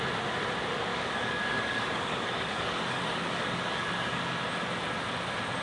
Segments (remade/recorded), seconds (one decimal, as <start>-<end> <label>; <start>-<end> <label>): 0.0-0.9 recorded; 0.9-4.2 remade; 4.2-5.6 recorded